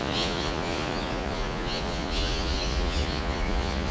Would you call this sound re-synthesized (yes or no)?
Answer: yes